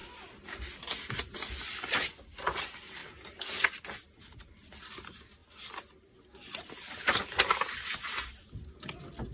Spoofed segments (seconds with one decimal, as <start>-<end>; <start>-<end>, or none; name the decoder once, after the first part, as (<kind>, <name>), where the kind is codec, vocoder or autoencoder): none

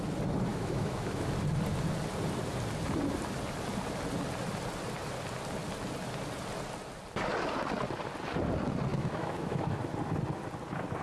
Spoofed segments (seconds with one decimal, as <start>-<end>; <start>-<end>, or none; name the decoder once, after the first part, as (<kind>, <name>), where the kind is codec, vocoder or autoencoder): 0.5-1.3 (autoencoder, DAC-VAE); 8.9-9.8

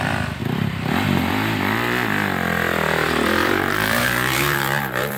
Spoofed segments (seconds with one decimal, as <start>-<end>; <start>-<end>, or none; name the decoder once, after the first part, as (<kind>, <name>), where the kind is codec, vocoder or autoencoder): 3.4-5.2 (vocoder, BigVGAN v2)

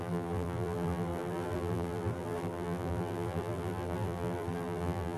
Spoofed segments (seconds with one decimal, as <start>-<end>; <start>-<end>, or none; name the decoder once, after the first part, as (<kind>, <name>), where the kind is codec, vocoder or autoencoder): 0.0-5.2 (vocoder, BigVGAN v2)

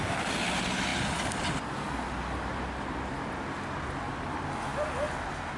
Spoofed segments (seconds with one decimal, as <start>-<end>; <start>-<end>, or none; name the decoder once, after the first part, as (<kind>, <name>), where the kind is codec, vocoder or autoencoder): none

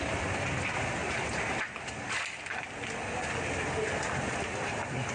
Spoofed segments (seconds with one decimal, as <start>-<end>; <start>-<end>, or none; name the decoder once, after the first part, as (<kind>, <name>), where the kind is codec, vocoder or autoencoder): none

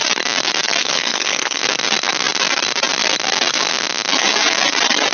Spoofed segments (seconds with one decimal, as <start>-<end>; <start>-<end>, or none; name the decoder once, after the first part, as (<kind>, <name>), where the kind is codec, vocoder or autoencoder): 0.8-1.6 (codec, SNAC)